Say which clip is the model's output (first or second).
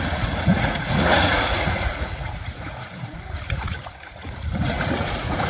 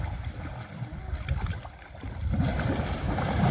first